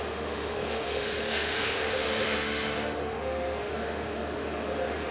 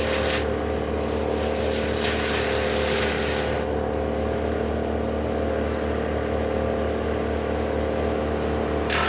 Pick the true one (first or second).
second